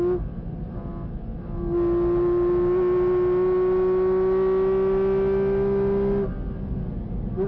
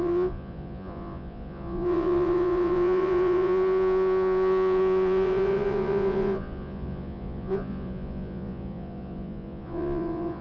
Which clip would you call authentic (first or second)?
first